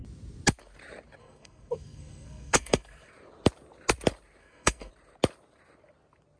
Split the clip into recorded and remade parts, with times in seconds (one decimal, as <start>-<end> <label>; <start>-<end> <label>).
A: 0.0-1.2 recorded; 1.2-3.1 remade; 3.1-4.4 recorded; 4.4-4.9 remade; 4.9-6.4 recorded